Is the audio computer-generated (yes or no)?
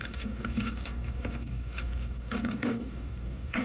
yes